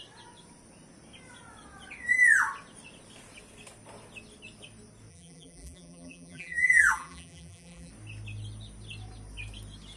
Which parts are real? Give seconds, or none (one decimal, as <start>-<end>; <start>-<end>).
0.0-5.1; 7.9-10.0